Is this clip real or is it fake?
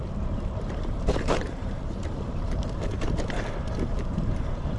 fake